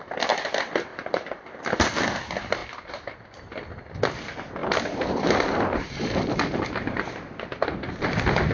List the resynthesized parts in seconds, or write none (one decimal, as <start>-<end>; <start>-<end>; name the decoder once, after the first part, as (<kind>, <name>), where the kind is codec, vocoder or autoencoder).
0.9-1.6 (vocoder, BigVGAN v2); 4.6-7.1

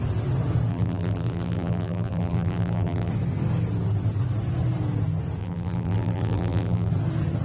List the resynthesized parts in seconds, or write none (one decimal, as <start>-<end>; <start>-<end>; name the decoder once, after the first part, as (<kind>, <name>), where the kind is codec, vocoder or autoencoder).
0.7-3.1 (vocoder, BigVGAN v2); 5.4-6.9

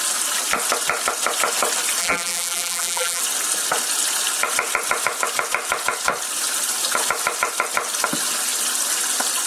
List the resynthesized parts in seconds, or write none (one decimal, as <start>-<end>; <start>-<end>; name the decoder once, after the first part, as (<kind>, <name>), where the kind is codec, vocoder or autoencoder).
2.0-3.2 (vocoder, BigVGAN v2)

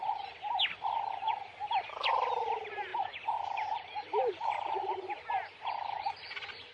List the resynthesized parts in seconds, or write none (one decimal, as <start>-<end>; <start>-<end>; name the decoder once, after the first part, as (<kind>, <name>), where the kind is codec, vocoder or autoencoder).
2.9-4.3 (vocoder, BigVGAN v2)

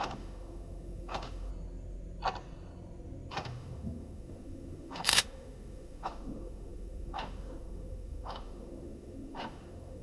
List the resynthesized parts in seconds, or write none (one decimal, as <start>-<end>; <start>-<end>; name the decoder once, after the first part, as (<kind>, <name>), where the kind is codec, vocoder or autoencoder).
0.0-1.5 (autoencoder, DAC-VAE); 3.3-10.0